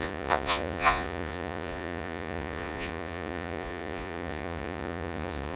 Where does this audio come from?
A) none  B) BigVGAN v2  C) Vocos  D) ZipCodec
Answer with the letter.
C